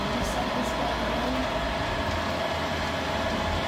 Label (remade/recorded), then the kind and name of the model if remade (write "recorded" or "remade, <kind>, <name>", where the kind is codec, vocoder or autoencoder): recorded